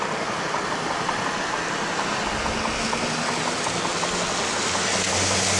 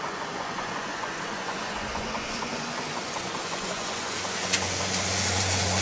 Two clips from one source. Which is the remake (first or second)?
second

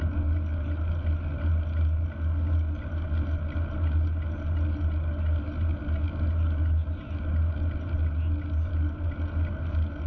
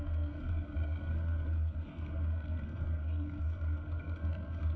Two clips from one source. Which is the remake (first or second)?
second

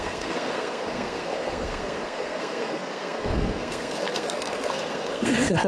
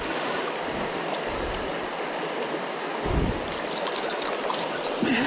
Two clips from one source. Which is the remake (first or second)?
first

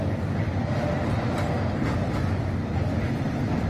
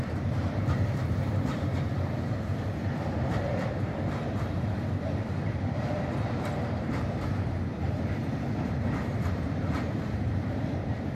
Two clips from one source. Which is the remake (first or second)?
second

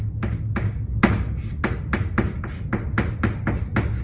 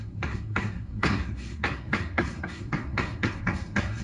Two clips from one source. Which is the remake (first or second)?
second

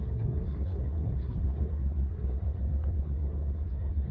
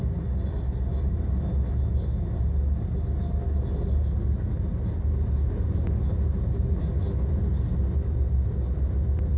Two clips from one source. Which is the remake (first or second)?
first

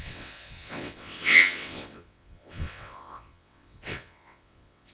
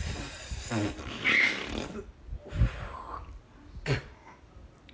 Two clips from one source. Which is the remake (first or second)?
first